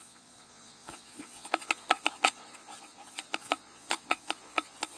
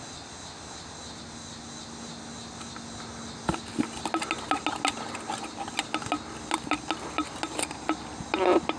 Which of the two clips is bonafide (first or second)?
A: second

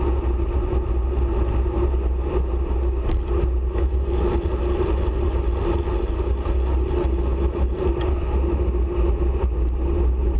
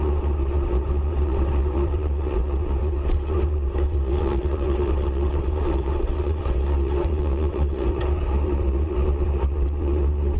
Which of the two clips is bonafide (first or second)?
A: first